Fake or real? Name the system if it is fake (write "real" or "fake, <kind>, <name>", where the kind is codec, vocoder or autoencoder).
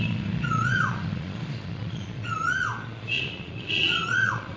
fake, vocoder, Vocos